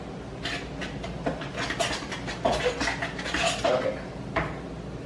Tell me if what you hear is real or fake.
real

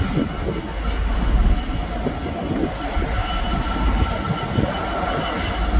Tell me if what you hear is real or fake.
real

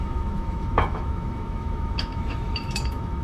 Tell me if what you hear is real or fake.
fake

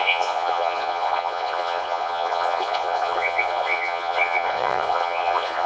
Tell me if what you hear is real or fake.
fake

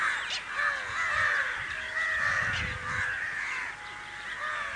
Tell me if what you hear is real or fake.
real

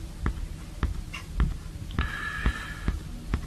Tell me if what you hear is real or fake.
real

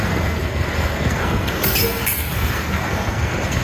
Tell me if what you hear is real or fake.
fake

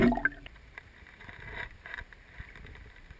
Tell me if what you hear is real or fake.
real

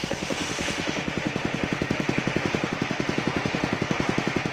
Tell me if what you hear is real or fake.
fake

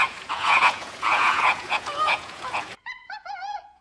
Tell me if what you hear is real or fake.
fake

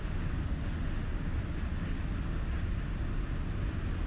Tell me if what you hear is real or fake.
real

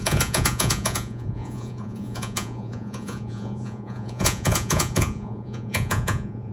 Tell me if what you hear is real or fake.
fake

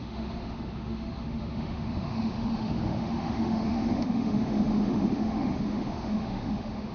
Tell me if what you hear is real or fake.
fake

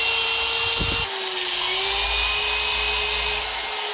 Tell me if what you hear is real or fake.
real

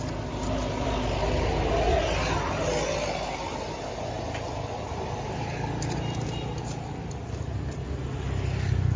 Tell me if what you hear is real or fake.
real